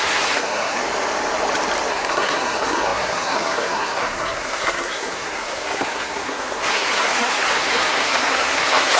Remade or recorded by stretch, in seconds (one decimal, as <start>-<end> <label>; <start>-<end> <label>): 0.0-0.8 remade; 0.8-1.9 recorded; 1.9-9.0 remade